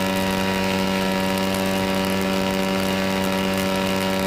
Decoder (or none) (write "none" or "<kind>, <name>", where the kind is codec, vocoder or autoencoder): none